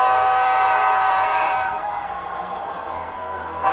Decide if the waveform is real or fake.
fake